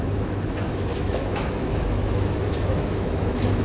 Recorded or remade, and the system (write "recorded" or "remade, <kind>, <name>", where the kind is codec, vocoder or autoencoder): remade, autoencoder, DAC-VAE